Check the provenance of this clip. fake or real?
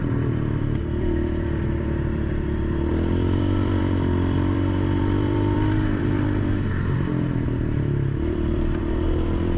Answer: fake